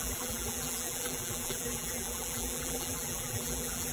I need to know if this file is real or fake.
fake